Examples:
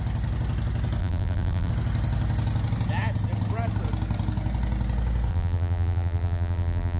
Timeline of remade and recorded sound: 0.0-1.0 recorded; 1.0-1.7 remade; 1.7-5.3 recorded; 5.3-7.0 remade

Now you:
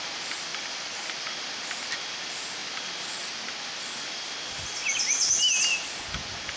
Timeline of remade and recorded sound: 0.0-0.5 recorded; 0.5-1.1 remade; 1.1-6.6 recorded

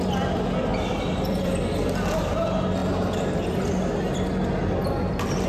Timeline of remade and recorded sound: 0.0-0.7 recorded; 0.7-1.6 remade; 1.6-5.5 recorded